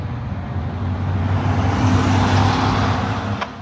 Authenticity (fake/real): real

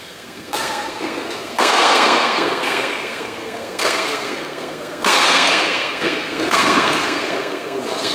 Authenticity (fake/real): fake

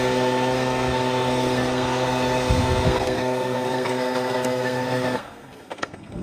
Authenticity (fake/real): fake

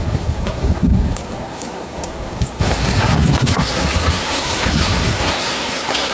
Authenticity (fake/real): fake